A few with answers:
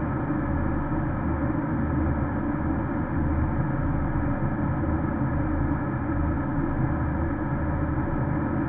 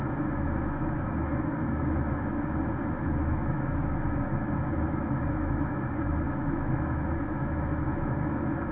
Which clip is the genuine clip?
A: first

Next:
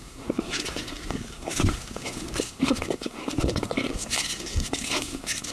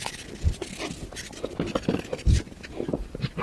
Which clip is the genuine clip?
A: second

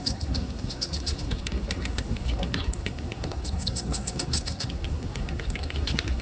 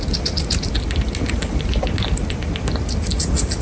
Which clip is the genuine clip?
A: second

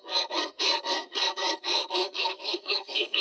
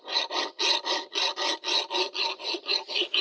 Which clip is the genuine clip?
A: second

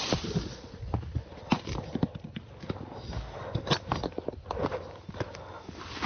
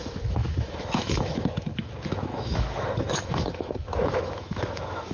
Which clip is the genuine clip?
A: first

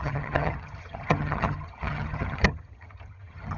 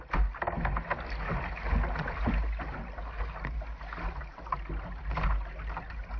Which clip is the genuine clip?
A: second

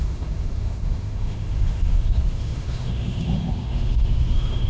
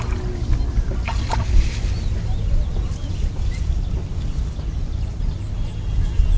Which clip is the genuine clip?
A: second